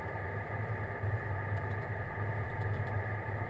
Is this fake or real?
real